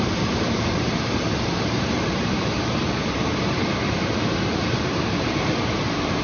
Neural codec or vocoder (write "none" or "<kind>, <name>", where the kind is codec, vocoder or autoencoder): vocoder, BigVGAN v2